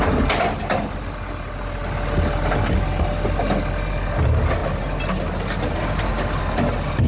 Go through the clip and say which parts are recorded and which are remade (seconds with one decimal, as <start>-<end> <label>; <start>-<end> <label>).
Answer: 0.0-7.1 recorded